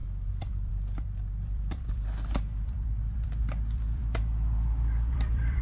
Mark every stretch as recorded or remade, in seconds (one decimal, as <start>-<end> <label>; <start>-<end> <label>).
0.0-4.0 remade; 4.0-5.1 recorded; 5.1-5.6 remade